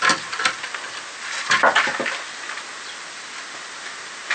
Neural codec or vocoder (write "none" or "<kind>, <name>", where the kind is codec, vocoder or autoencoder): none